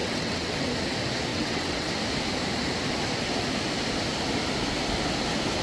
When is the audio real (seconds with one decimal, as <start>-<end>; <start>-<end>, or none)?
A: 0.7-1.3; 1.9-5.6